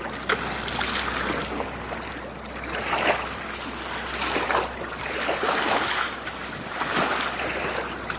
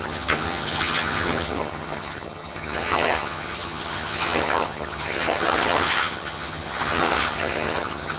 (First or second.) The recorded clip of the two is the first